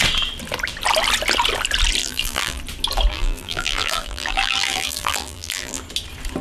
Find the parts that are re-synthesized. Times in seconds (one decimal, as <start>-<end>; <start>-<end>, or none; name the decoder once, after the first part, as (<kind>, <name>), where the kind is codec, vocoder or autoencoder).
2.0-2.6 (vocoder, BigVGAN v2); 3.1-5.8